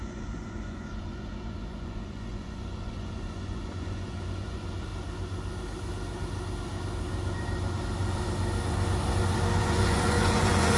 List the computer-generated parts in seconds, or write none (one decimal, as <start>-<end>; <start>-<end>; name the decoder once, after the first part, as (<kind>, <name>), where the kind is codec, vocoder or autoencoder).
0.0-4.9 (vocoder, Vocos); 9.6-10.8